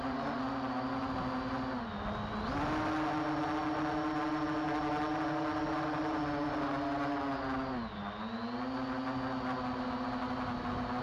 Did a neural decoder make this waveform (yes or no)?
no